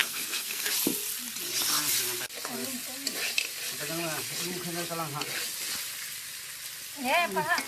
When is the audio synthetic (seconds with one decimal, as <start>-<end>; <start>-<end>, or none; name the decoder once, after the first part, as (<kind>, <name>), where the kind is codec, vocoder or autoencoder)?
0.0-0.7 (codec, SNAC)

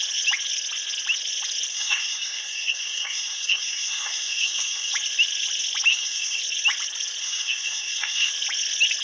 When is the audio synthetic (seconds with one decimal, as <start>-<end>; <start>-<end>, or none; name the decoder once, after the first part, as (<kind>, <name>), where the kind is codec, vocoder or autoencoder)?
1.7-4.9 (codec, SNAC); 5.9-6.4; 7.2-8.3

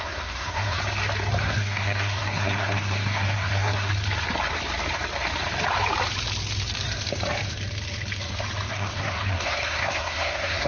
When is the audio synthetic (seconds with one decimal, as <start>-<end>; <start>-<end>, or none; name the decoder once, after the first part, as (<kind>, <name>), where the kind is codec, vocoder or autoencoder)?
0.0-0.8 (codec, SNAC); 1.4-3.9; 8.7-10.7

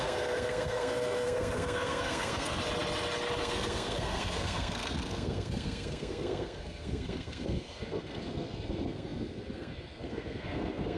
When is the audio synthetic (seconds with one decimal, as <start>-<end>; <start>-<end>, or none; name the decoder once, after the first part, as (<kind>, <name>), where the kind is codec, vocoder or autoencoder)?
0.0-2.6 (codec, SNAC); 3.4-11.0